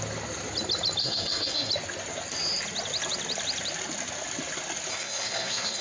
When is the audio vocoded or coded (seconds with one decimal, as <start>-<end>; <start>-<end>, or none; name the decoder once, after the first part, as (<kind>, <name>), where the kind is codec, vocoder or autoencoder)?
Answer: 1.0-1.7 (codec, SNAC); 4.9-5.8